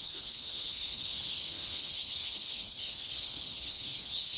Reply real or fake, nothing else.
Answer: fake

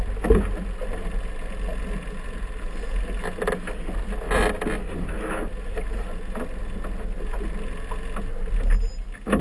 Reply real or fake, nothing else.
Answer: real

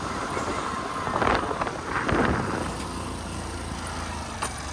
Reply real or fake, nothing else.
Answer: real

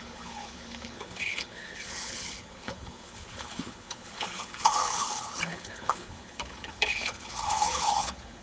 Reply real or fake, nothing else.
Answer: fake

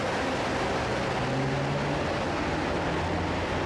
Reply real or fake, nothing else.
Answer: real